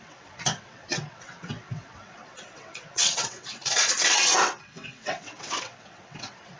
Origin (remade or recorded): remade